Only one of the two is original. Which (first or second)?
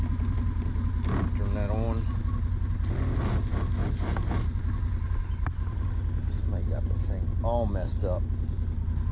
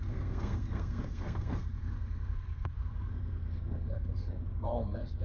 first